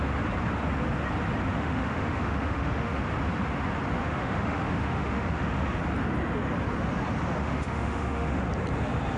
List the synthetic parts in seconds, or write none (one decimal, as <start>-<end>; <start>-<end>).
1.5-3.0; 4.0-5.8; 7.4-8.4